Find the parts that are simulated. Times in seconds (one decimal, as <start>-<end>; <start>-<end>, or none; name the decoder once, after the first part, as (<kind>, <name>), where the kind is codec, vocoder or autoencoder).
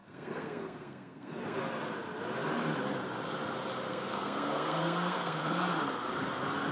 0.0-1.6 (codec, SNAC); 3.9-5.8